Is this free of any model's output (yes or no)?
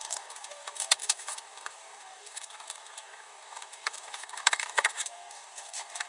no